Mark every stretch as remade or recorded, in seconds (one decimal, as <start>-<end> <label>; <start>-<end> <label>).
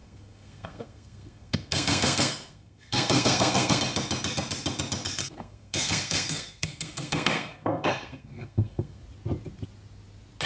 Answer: 0.0-3.8 remade; 3.8-5.2 recorded; 5.2-9.0 remade; 9.0-10.5 recorded